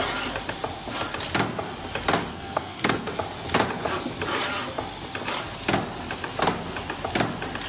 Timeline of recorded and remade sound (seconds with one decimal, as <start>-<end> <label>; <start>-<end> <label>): 0.0-2.3 recorded; 2.3-3.1 remade; 3.1-7.7 recorded

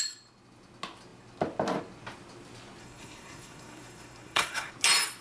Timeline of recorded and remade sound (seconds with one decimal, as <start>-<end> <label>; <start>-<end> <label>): 0.0-2.8 recorded; 2.8-4.7 remade; 4.7-5.2 recorded